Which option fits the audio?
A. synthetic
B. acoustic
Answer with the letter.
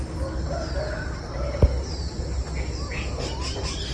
B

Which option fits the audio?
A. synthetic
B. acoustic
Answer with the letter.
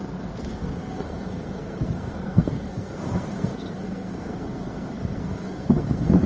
A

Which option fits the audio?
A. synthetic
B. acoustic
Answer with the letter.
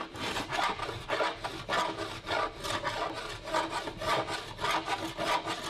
B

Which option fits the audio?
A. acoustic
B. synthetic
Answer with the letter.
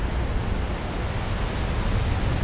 A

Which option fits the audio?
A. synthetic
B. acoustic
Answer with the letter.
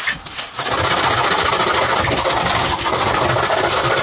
B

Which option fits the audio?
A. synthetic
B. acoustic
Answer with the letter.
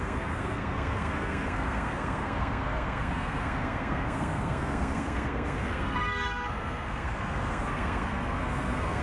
A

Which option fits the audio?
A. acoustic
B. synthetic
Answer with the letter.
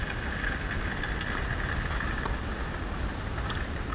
A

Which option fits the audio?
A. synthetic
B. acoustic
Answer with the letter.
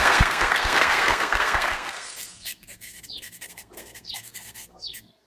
A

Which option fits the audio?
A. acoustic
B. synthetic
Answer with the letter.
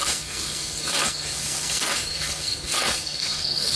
B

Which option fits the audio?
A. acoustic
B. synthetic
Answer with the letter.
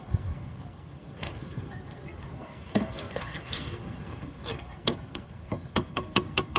B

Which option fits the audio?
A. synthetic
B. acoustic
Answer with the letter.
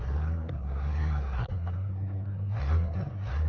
A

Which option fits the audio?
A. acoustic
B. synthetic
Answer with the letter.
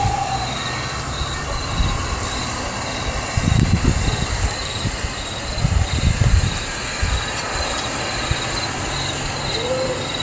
A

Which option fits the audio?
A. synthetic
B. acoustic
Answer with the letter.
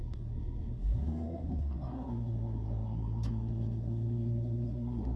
A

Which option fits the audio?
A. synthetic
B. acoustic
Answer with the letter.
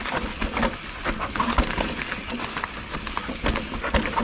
B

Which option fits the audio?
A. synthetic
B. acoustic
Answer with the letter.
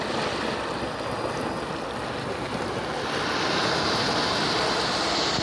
B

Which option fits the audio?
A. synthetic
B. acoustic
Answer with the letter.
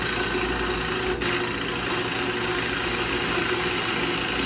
B